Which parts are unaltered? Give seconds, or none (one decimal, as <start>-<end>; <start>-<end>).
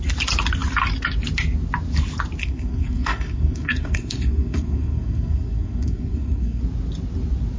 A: 0.0-2.4; 6.6-7.6